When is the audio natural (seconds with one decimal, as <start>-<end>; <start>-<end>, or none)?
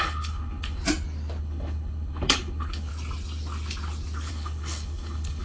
0.8-1.4; 2.9-4.3